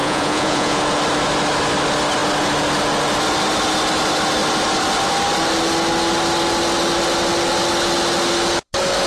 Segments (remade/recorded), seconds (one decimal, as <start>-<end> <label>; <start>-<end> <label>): 0.0-0.8 remade; 0.8-9.1 recorded